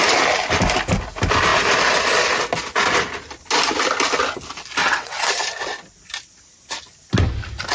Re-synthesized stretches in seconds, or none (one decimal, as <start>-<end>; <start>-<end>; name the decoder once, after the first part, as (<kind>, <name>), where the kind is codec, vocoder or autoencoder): 4.8-5.3 (vocoder, WaveNeXt)